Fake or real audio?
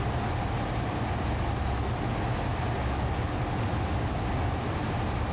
real